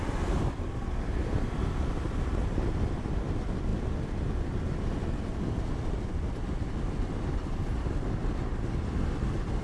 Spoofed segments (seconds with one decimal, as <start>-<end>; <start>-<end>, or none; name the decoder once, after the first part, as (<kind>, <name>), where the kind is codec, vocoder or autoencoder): none